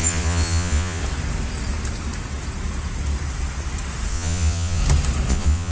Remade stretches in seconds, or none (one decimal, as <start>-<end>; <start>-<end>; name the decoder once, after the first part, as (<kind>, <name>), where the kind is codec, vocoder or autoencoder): 0.0-1.0 (vocoder, Vocos); 4.1-4.8; 5.3-5.7